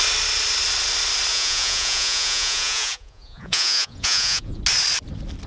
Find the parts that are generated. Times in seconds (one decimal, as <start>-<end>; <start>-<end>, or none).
1.3-4.6